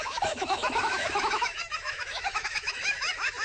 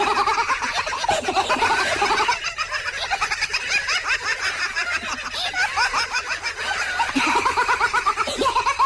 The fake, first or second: first